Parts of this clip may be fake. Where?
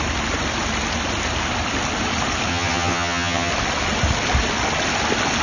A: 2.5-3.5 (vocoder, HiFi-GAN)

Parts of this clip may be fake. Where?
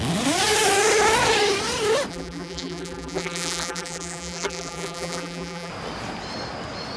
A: 2.1-5.7 (vocoder, BigVGAN v2)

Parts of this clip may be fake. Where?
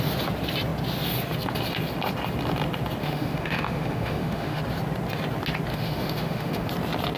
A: 3.0-4.6 (autoencoder, DAC-VAE); 5.7-6.7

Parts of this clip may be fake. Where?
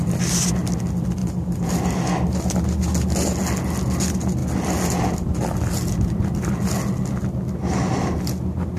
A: none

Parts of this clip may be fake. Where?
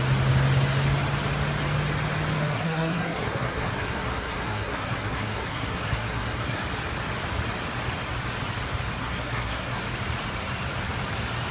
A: 2.4-6.6 (codec, SNAC); 9.0-9.8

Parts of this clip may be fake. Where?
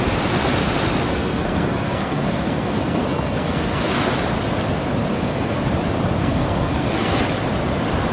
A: 1.1-4.0 (codec, SNAC); 5.1-5.7; 6.2-7.2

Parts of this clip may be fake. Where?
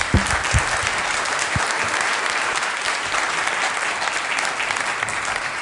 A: 0.8-3.3 (vocoder, BigVGAN v2)